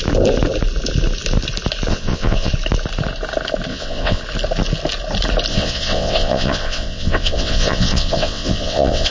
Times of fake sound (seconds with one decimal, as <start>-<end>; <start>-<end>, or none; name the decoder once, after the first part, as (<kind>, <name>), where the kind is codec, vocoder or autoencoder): 1.9-2.5 (vocoder, WaveNeXt); 3.7-4.2; 5.5-9.1